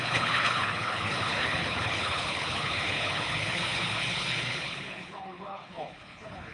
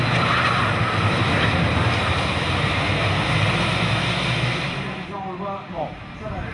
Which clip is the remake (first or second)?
first